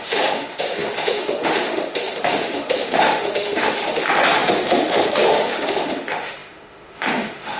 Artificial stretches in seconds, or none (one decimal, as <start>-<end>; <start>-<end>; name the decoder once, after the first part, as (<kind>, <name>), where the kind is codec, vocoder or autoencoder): 0.0-7.6 (autoencoder, DAC-VAE)

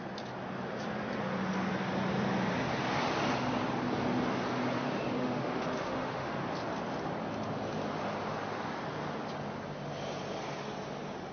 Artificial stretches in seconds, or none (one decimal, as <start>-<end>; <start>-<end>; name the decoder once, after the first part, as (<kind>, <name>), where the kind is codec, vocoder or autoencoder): 5.2-6.4 (autoencoder, DAC-VAE)

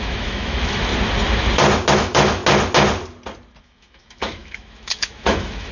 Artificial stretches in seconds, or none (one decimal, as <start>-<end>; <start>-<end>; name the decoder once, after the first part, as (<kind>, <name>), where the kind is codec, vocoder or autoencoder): 0.0-0.9 (autoencoder, DAC-VAE); 1.9-2.4; 3.6-5.7

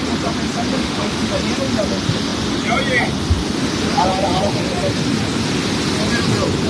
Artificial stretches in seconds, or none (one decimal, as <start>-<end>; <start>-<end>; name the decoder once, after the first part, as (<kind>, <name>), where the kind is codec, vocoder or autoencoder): 0.7-1.3 (autoencoder, DAC-VAE)

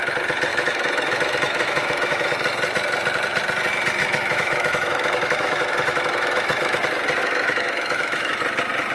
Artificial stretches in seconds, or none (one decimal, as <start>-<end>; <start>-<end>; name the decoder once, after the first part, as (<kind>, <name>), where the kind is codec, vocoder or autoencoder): 0.5-2.3 (autoencoder, DAC-VAE); 4.0-6.8; 7.2-8.4

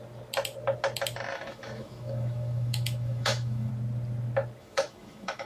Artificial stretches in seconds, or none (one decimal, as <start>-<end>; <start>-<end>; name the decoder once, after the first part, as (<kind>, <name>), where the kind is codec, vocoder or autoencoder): 1.3-3.7 (autoencoder, DAC-VAE); 4.6-5.5

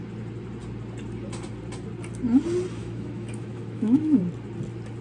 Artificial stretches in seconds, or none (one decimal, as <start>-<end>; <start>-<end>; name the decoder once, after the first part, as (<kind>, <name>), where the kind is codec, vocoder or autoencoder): 2.8-4.2 (autoencoder, DAC-VAE)

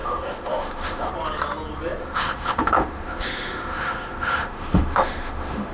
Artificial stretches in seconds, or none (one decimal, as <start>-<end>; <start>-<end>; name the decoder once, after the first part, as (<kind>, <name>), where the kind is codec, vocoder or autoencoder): 0.0-1.1 (autoencoder, DAC-VAE); 2.0-5.7